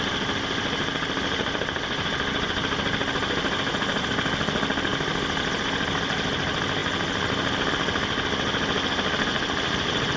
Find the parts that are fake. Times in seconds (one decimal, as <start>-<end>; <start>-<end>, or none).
none